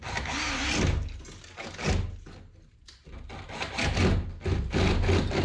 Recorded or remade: recorded